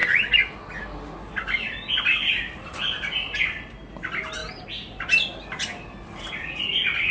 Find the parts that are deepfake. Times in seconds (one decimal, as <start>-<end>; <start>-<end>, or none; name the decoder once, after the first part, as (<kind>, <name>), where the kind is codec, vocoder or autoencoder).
1.3-4.4 (vocoder, BigVGAN v2); 6.3-7.1

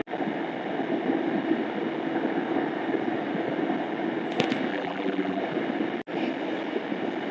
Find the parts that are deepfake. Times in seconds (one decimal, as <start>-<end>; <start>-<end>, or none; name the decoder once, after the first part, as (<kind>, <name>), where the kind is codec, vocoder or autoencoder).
4.7-5.4 (vocoder, BigVGAN v2)

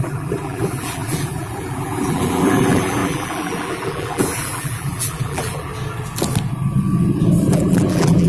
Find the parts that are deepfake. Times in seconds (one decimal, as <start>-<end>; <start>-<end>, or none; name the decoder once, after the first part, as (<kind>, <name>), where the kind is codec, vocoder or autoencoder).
0.0-5.7 (vocoder, BigVGAN v2); 7.5-8.3